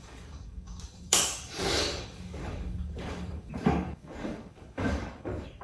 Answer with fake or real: fake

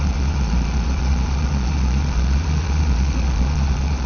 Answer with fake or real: fake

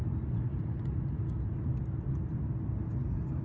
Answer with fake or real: real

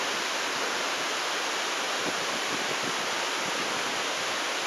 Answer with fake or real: real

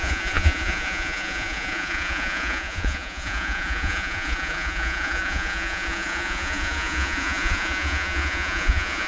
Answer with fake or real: fake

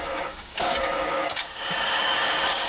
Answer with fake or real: fake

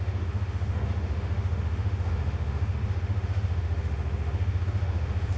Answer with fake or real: fake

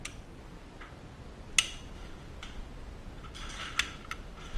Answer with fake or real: real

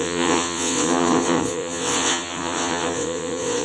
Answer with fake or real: fake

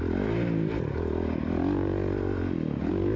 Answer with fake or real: real